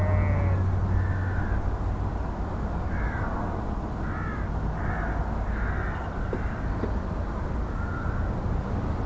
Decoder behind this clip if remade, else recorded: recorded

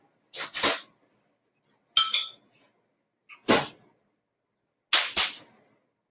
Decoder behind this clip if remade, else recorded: recorded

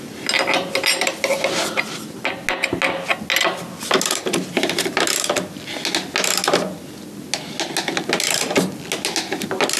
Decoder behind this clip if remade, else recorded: recorded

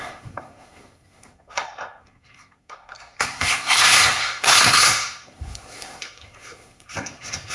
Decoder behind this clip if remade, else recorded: remade, codec, SNAC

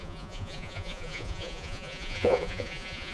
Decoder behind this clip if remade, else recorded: remade, vocoder, Vocos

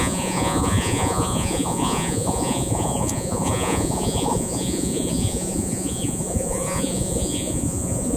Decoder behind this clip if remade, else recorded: remade, vocoder, Vocos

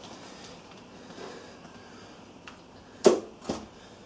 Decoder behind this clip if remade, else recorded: recorded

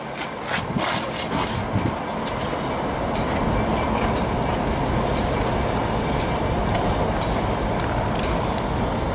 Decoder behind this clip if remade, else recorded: recorded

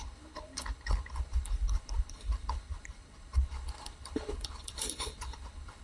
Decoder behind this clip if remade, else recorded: remade, codec, HILCodec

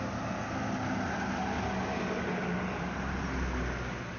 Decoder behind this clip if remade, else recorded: recorded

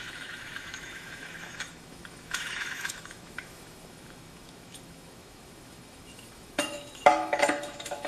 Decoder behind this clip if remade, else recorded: remade, autoencoder, DAC-VAE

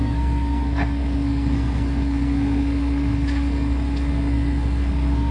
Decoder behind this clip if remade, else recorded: remade, codec, SNAC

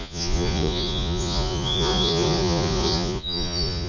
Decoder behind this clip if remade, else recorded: remade, vocoder, Vocos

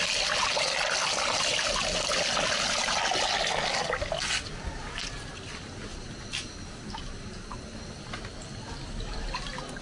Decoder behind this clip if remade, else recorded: recorded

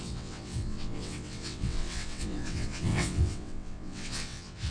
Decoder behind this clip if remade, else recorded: remade, vocoder, WaveNeXt